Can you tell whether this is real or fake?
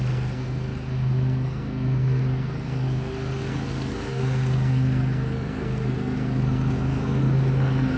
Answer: fake